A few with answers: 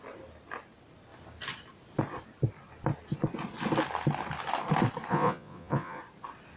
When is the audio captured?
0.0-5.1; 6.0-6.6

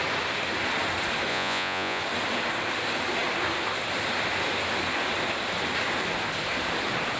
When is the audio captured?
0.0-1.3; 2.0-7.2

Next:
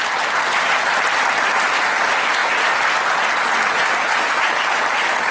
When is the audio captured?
0.0-5.3

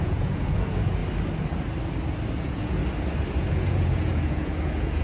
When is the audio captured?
1.0-2.4; 2.8-3.4